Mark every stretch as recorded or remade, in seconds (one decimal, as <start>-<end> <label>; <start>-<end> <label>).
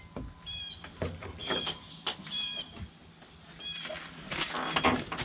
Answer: 0.0-1.4 recorded; 1.4-1.9 remade; 1.9-5.2 recorded